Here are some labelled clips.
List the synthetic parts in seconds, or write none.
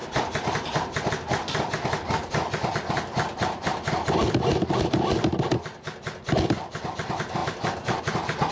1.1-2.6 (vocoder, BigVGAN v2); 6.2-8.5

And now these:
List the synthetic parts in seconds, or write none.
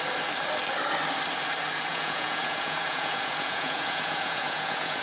1.9-5.0 (vocoder, Vocos)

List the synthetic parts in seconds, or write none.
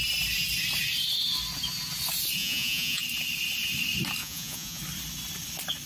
2.4-3.0 (vocoder, Vocos); 4.2-4.8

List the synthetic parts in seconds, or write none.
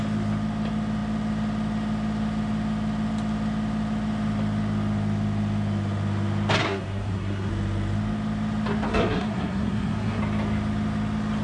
6.6-7.5 (codec, SNAC); 8.9-10.2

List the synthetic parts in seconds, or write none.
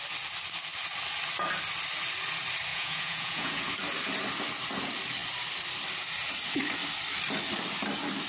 2.7-3.6 (vocoder, Vocos)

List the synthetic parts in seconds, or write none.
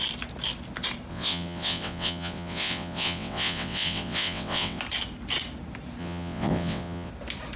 1.1-4.8 (vocoder, WaveNeXt); 6.0-7.1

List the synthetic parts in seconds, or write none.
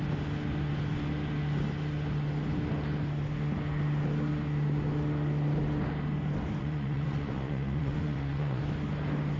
6.6-8.6 (vocoder, Vocos)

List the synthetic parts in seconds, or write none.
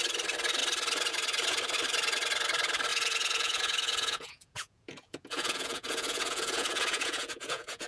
2.9-7.9 (vocoder, Vocos)